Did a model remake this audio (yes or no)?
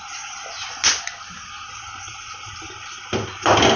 no